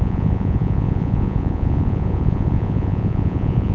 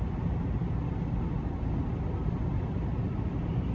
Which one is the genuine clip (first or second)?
second